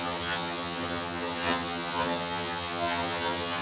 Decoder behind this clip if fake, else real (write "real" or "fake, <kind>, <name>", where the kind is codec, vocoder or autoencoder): fake, vocoder, HiFi-GAN